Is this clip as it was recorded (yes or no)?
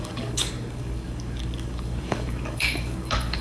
no